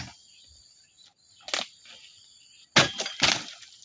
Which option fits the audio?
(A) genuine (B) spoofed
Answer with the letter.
A